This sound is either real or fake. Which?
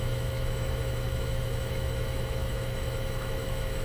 fake